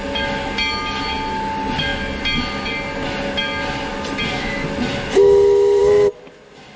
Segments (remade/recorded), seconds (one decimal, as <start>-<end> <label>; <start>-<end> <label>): 0.0-6.8 recorded